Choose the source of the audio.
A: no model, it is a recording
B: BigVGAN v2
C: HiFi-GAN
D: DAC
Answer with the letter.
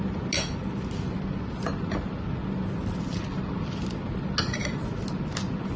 A